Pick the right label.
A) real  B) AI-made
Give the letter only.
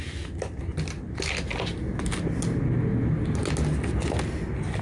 A